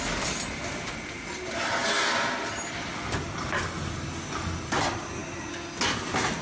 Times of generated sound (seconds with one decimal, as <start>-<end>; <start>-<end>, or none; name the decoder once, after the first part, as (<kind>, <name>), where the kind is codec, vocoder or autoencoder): none